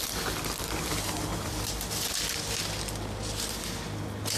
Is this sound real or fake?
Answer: real